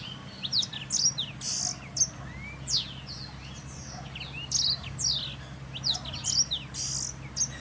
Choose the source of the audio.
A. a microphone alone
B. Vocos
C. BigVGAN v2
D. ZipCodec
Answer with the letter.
A